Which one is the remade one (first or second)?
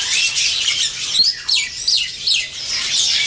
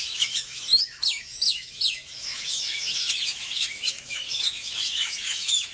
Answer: second